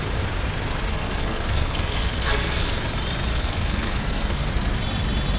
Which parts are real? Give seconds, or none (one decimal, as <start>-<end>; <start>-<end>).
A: 0.0-0.9; 2.8-3.3; 4.5-5.4